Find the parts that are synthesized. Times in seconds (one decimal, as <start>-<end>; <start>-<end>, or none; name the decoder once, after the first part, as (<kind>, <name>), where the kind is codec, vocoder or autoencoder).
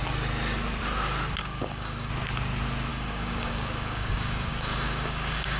1.4-2.1 (codec, DAC); 2.9-5.6